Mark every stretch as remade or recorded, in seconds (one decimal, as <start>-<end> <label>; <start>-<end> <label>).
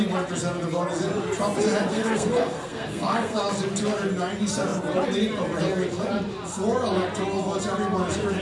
0.0-1.9 recorded; 1.9-3.4 remade; 3.4-8.4 recorded